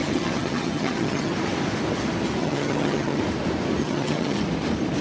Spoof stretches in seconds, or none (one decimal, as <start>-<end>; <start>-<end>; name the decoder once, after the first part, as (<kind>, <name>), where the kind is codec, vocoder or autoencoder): 0.0-1.3 (vocoder, HiFi-GAN); 2.4-3.2; 3.8-4.4